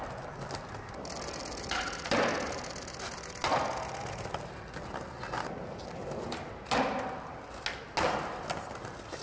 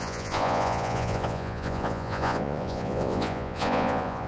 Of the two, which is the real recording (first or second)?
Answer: first